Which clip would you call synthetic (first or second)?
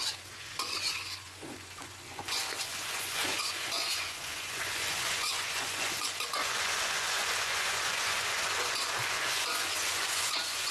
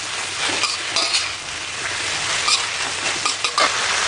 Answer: first